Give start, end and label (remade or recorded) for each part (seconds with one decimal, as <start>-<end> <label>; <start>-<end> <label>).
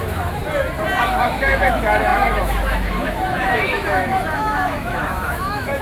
0.0-0.4 remade; 0.4-1.0 recorded; 1.0-5.8 remade